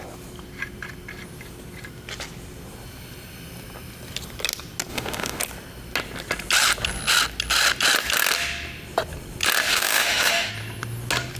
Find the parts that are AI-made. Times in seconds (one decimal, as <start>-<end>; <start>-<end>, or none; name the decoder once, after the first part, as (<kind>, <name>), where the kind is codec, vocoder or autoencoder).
4.9-5.4 (autoencoder, DAC-VAE); 9.7-10.5